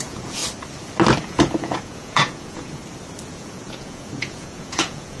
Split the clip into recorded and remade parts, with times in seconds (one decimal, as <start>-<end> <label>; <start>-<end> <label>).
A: 0.0-0.4 remade; 0.4-1.2 recorded; 1.2-2.8 remade; 2.8-3.3 recorded; 3.3-5.2 remade